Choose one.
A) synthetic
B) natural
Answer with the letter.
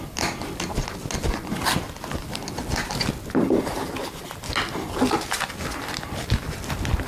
B